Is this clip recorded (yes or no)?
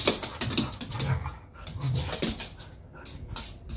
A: yes